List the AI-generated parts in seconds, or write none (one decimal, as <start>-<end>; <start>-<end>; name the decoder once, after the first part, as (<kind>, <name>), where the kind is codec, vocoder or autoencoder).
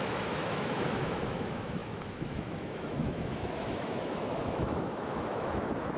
0.0-6.0 (autoencoder, DAC-VAE)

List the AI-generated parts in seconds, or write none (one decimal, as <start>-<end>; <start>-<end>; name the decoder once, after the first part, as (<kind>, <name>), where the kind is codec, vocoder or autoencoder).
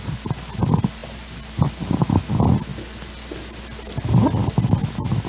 none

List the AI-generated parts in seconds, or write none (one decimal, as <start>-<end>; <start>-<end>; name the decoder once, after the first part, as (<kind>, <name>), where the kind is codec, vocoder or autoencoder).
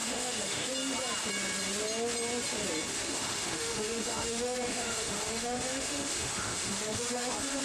0.0-0.7 (autoencoder, DAC-VAE); 2.9-7.6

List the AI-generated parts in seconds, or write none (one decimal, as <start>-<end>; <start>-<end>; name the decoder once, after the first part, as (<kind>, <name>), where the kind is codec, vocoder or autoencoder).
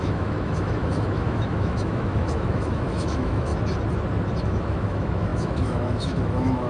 0.0-3.5 (autoencoder, DAC-VAE); 4.4-6.7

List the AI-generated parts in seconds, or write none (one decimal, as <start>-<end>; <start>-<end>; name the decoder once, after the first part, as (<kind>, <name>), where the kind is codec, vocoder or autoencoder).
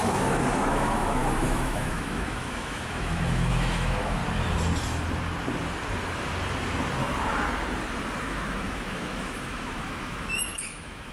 0.0-4.2 (autoencoder, DAC-VAE); 8.2-11.1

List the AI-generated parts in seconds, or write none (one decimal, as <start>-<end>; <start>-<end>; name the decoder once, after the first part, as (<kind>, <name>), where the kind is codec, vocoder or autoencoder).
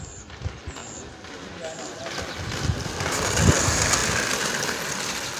none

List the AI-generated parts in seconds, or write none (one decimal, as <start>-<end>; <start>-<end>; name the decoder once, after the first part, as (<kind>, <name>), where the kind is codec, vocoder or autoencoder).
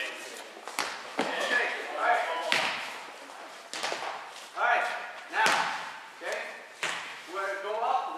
1.1-3.0 (autoencoder, DAC-VAE); 7.1-7.7